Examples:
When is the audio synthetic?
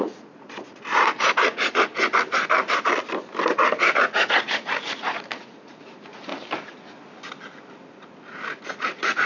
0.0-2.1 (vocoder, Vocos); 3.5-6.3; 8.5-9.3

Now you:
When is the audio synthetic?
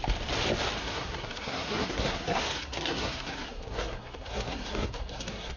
0.8-5.6 (codec, SNAC)